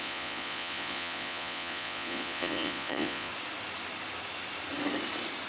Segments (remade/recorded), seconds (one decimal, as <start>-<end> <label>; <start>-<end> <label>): 0.0-3.3 remade; 3.3-5.5 recorded